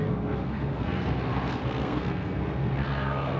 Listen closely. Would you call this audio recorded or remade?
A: remade